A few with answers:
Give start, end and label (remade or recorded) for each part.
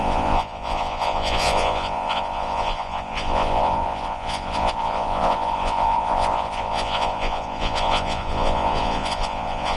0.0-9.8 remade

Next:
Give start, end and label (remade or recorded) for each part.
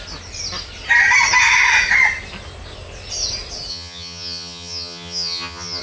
0.0-3.7 recorded; 3.7-5.8 remade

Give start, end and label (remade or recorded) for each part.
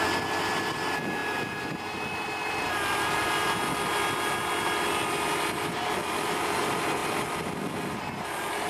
0.0-8.7 recorded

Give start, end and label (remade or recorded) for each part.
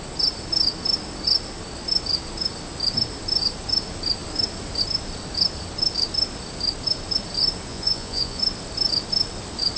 0.0-7.7 recorded; 7.7-8.4 remade; 8.4-9.8 recorded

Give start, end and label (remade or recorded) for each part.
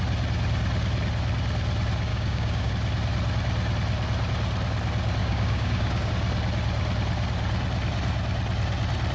0.0-2.1 recorded; 2.1-2.7 remade; 2.7-5.2 recorded; 5.2-6.1 remade; 6.1-9.1 recorded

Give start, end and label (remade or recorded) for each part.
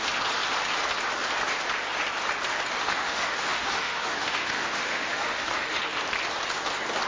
0.0-2.9 recorded; 2.9-5.8 remade; 5.8-7.1 recorded